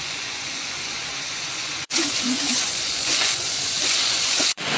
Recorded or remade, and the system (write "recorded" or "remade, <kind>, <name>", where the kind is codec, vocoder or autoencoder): remade, vocoder, Vocos